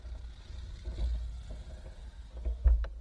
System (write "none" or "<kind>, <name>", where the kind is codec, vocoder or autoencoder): none